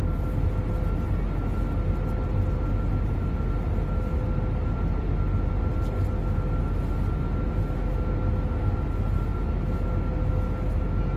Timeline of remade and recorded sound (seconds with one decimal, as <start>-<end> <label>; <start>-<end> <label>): 0.0-11.2 recorded